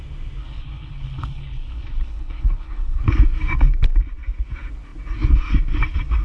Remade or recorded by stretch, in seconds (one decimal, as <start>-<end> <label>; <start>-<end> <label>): 0.0-0.4 recorded; 0.4-3.0 remade; 3.0-6.2 recorded